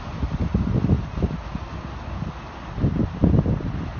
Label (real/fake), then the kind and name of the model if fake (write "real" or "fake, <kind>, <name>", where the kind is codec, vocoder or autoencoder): real